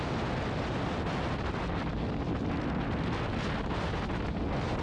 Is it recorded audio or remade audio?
recorded